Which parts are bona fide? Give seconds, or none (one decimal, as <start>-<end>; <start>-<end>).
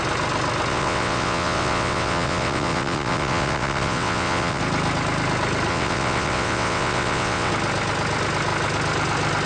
0.0-0.7; 4.6-5.7; 7.5-9.5